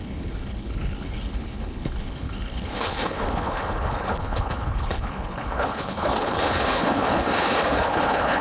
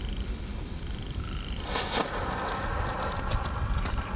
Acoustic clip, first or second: second